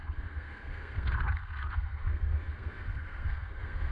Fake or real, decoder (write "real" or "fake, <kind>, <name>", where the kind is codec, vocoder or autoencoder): fake, codec, SNAC